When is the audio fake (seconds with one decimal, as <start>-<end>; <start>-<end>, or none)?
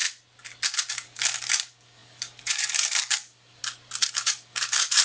0.9-3.6; 4.1-5.0